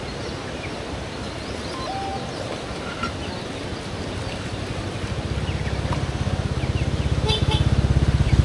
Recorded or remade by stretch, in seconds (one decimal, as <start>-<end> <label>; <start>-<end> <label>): 0.0-8.4 recorded